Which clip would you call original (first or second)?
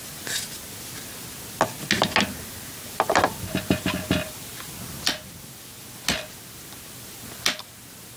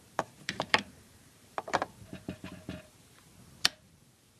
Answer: first